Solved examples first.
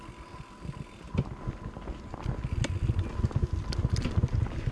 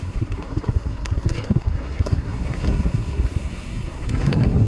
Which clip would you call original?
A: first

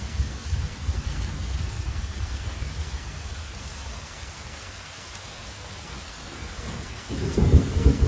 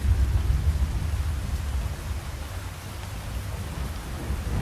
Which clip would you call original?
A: second